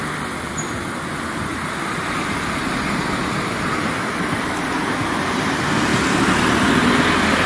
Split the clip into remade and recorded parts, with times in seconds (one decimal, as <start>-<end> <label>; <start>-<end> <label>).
0.0-7.5 recorded